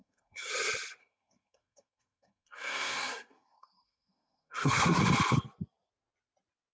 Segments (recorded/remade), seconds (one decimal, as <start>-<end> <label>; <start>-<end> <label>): 0.0-0.5 remade; 0.5-1.0 recorded; 1.0-5.0 remade; 5.0-6.7 recorded